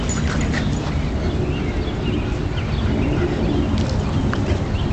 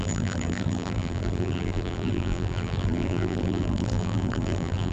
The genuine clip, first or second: first